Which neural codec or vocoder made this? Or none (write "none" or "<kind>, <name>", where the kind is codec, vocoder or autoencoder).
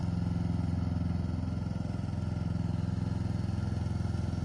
none